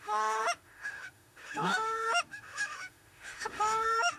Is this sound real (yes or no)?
no